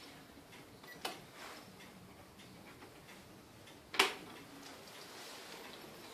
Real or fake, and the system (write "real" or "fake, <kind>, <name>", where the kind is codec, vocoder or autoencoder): real